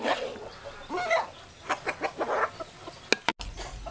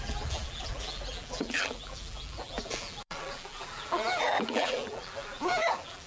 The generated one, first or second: second